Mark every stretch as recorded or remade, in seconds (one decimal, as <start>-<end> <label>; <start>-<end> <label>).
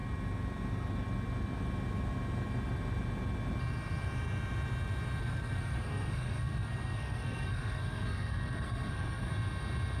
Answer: 0.0-5.2 recorded; 5.2-9.3 remade; 9.3-10.0 recorded